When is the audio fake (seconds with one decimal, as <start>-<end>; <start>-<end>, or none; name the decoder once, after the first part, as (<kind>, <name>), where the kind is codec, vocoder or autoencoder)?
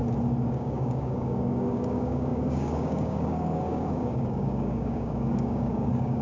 0.5-6.2 (codec, DAC)